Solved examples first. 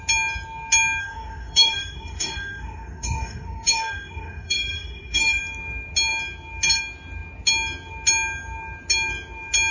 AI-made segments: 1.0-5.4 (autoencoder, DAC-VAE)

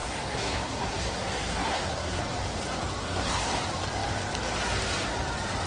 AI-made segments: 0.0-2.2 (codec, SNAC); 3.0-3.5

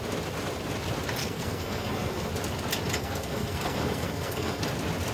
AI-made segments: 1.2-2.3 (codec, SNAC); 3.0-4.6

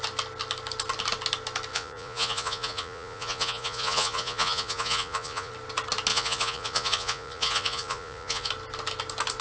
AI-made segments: 1.7-5.5 (vocoder, Vocos); 6.1-8.5